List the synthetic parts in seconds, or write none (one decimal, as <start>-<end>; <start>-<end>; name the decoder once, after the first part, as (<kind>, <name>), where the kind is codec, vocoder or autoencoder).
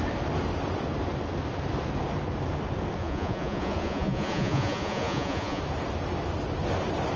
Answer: 3.0-5.6 (vocoder, Vocos)